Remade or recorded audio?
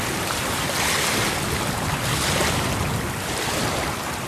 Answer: recorded